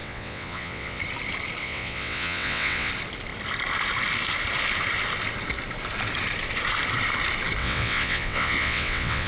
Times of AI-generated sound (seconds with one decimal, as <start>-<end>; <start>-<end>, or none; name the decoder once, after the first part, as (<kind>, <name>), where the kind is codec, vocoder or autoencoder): 0.0-1.0 (vocoder, WaveNeXt); 1.6-2.9; 7.6-9.3